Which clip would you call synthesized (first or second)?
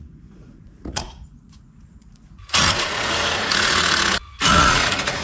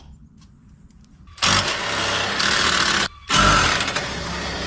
first